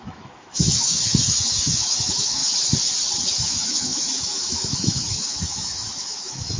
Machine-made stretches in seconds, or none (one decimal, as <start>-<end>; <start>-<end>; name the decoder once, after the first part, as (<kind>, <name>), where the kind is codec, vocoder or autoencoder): 0.0-2.4 (autoencoder, DAC-VAE); 3.4-6.6